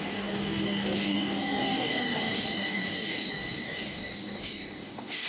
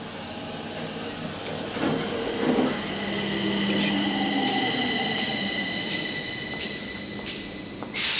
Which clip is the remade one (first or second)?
first